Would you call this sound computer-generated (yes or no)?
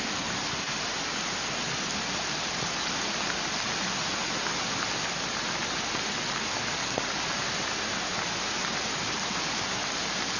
no